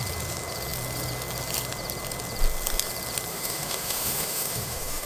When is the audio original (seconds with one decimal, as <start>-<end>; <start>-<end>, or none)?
0.0-3.3